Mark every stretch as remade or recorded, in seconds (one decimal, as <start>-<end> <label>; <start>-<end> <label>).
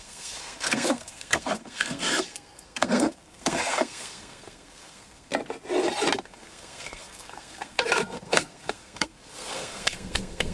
0.0-5.3 remade; 5.3-6.2 recorded; 6.2-10.5 remade